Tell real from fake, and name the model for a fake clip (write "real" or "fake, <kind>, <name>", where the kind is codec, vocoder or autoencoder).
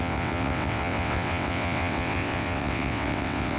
fake, vocoder, WaveNeXt